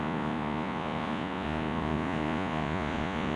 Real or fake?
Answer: fake